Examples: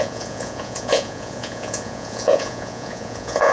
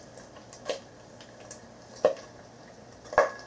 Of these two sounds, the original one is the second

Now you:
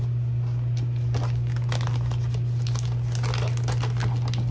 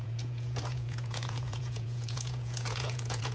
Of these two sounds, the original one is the first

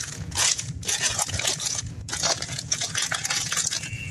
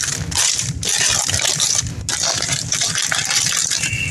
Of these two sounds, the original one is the second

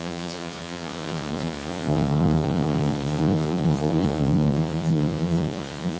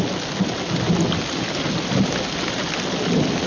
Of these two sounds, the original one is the second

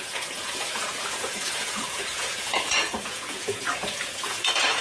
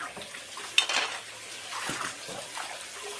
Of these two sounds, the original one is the second